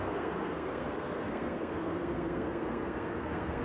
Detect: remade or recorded remade